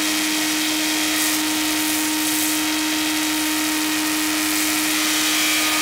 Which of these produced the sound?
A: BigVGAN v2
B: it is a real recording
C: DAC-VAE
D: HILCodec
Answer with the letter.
B